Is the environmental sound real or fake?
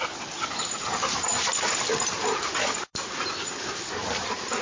real